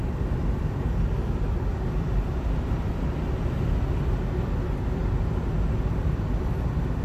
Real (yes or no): yes